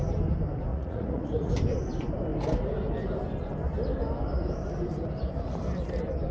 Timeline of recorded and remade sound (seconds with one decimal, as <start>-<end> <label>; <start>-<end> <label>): 0.0-0.7 recorded; 0.7-1.5 remade; 1.5-6.3 recorded